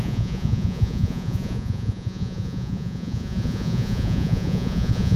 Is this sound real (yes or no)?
no